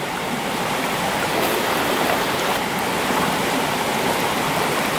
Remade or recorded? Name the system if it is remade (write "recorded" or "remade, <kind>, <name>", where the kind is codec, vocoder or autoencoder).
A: recorded